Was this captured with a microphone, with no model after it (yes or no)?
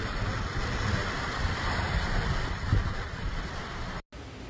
yes